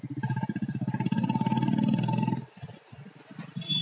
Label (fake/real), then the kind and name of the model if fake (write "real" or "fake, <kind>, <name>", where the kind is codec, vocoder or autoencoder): real